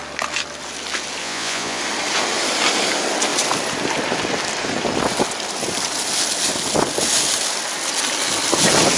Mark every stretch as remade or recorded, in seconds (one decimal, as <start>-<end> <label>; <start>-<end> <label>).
0.0-1.2 recorded; 1.2-1.8 remade; 1.8-9.0 recorded